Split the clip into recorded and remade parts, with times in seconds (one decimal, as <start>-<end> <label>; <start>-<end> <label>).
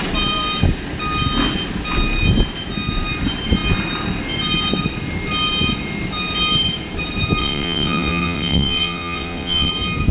0.0-7.4 recorded; 7.4-9.7 remade; 9.7-10.1 recorded